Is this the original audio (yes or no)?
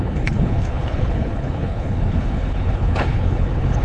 no